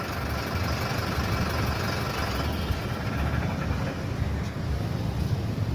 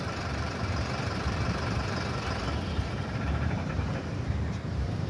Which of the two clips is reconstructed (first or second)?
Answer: second